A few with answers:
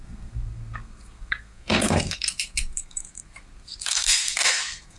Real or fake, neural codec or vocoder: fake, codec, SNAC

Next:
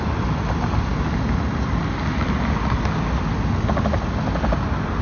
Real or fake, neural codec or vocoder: real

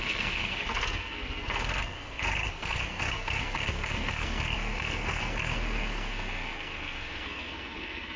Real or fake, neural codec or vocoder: fake, codec, SNAC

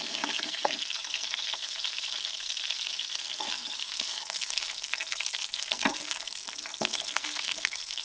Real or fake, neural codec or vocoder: fake, codec, SNAC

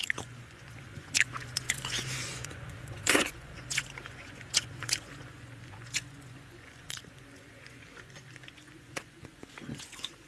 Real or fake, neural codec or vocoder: fake, vocoder, Vocos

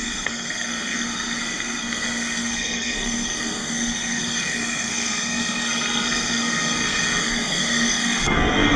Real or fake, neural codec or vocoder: fake, codec, SNAC